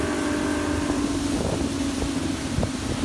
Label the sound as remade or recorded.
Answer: recorded